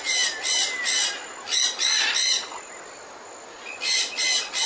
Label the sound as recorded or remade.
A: recorded